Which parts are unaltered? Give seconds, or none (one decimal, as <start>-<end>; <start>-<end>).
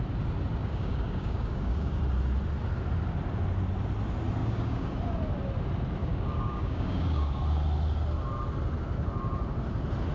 0.0-0.6; 2.0-4.4; 4.9-6.0; 7.4-10.1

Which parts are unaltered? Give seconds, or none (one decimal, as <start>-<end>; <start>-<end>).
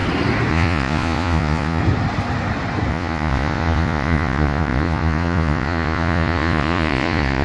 0.0-0.5; 1.8-2.9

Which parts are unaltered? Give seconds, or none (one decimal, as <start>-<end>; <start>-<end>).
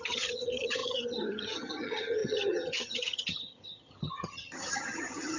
none